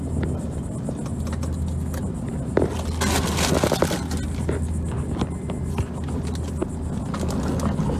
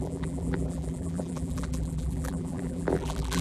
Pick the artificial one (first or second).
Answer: second